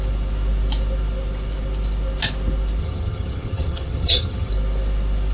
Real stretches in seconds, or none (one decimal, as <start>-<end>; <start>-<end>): 0.0-2.8; 4.5-5.3